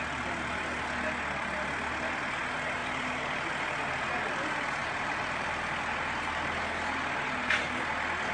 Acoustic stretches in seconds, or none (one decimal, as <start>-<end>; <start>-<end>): 0.0-2.8; 3.5-4.8; 6.0-8.3